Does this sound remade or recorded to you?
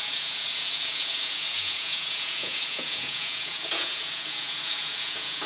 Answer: remade